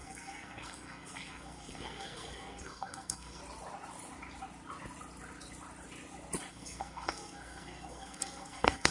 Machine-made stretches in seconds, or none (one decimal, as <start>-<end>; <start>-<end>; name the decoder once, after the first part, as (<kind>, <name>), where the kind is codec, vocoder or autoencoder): 0.0-3.4 (codec, SNAC); 6.5-8.9